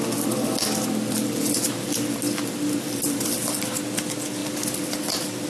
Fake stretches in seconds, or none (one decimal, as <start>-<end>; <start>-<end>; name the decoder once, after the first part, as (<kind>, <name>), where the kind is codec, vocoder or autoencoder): none